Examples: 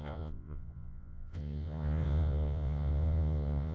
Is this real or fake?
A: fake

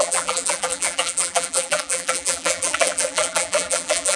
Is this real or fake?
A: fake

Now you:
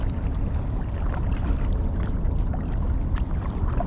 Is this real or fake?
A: real